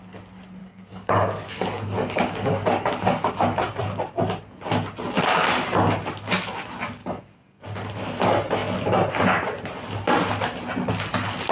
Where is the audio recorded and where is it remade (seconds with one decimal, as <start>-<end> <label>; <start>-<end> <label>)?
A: 0.0-0.6 recorded; 0.6-3.3 remade; 3.3-7.0 recorded; 7.0-7.6 remade; 7.6-11.5 recorded